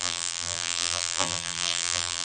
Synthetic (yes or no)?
yes